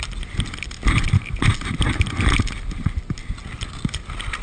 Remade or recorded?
recorded